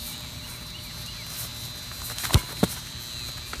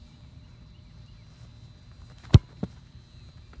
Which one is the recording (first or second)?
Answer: first